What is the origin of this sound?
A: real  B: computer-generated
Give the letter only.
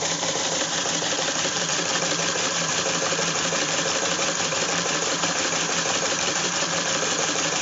B